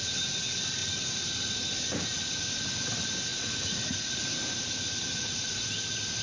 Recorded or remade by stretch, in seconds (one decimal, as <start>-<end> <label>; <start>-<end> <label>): 0.0-3.3 recorded; 3.3-4.2 remade; 4.2-5.1 recorded; 5.1-5.7 remade; 5.7-6.2 recorded